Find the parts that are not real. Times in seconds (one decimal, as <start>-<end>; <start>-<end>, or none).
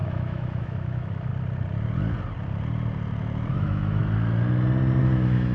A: 0.0-1.3; 3.5-4.0; 5.0-5.5